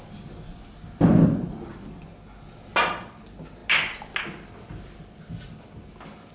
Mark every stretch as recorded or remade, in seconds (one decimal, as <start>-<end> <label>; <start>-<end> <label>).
0.0-6.3 recorded